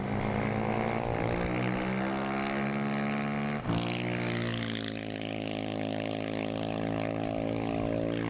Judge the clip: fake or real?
real